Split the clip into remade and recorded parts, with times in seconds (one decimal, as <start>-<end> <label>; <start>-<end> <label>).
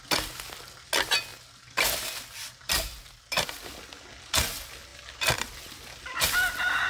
0.0-1.3 recorded; 1.3-2.7 remade; 2.7-6.9 recorded